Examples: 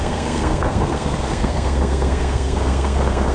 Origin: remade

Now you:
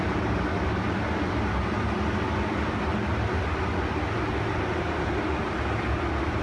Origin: recorded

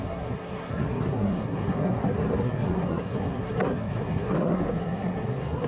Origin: remade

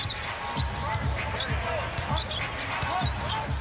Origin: recorded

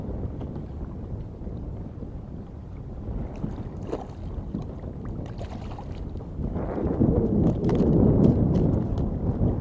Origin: recorded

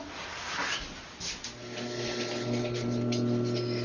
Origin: recorded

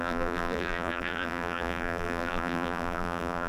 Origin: remade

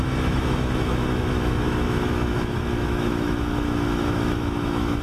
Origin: remade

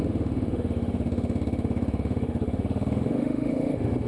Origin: remade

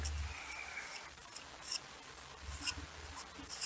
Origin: recorded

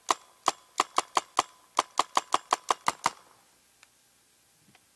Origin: recorded